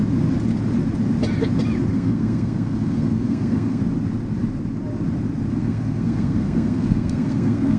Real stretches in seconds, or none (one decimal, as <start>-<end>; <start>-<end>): 0.0-1.9; 3.8-5.6